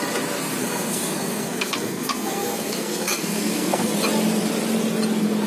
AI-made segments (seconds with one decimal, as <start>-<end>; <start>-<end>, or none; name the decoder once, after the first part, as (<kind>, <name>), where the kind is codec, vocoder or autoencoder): 0.6-3.9 (codec, SNAC)